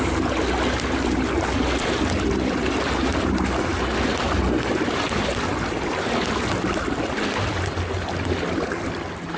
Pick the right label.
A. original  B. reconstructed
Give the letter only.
A